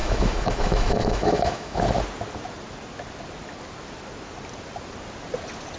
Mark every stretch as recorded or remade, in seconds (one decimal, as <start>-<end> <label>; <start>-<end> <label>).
0.0-1.8 remade; 1.8-5.8 recorded